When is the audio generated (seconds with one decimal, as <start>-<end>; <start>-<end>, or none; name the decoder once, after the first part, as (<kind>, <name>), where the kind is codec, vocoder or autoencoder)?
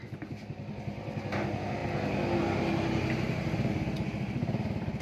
none